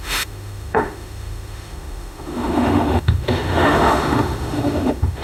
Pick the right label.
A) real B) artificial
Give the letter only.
B